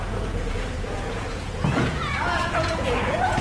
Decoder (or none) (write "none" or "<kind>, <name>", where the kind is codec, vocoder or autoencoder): vocoder, Vocos